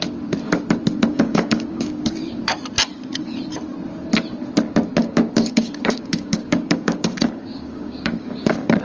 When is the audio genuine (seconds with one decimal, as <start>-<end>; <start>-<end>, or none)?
0.0-1.1; 2.4-5.0